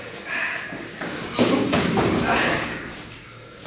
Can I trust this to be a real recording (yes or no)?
no